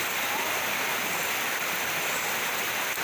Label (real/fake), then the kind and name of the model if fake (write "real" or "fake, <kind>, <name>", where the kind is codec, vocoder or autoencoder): real